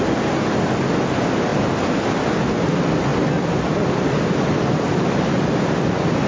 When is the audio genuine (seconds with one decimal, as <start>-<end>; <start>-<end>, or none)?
0.0-6.3